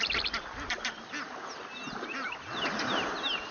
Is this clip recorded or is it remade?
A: recorded